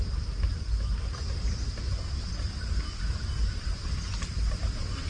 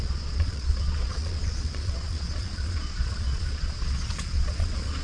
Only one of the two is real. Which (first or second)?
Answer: first